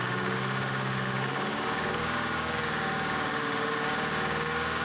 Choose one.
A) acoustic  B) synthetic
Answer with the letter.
B